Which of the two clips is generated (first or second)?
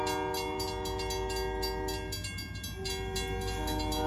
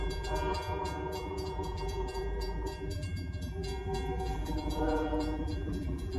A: second